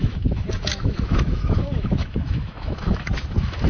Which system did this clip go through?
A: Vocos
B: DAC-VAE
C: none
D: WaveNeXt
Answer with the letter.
B